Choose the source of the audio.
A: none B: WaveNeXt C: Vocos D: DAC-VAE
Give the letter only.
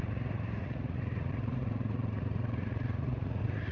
C